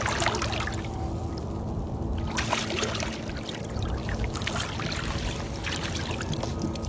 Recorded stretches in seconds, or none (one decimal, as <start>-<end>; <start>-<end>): 0.0-4.0; 4.5-6.9